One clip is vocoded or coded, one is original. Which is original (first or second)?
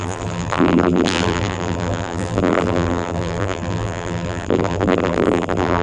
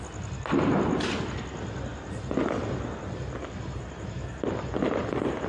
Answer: second